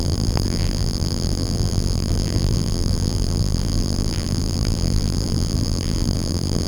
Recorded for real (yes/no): no